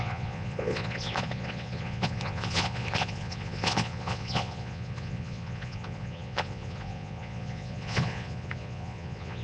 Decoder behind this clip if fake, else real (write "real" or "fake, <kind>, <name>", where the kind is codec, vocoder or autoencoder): fake, vocoder, Vocos